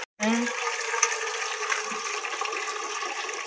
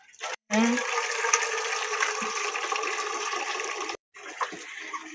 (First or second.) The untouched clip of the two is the first